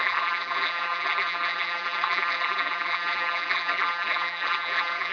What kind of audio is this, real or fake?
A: fake